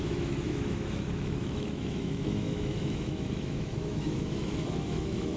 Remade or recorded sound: remade